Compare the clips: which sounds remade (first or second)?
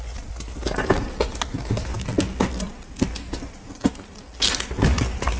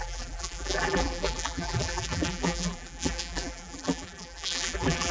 second